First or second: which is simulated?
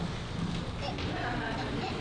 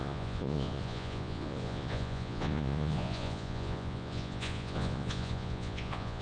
second